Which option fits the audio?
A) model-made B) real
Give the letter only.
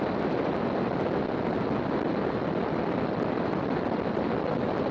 B